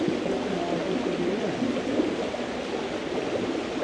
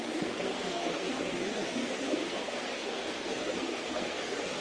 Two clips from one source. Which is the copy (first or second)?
second